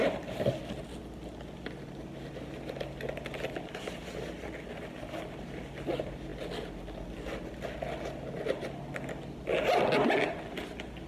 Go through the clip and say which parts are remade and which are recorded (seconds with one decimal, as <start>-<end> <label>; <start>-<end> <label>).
0.0-11.1 recorded